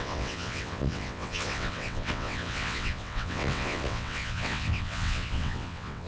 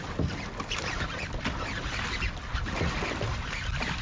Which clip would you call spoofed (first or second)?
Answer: first